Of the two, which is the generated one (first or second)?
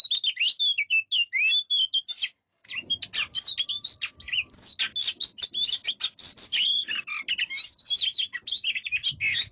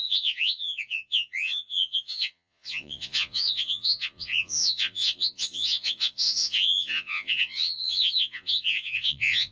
second